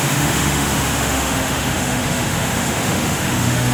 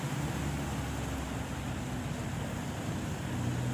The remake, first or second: first